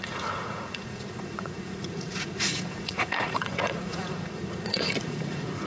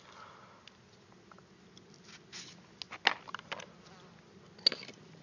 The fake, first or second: first